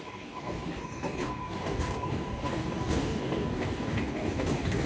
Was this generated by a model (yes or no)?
yes